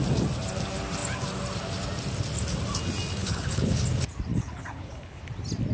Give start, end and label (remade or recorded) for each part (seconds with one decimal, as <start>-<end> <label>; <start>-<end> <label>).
0.0-3.2 recorded; 3.2-3.8 remade; 3.8-4.3 recorded; 4.3-5.2 remade; 5.2-5.7 recorded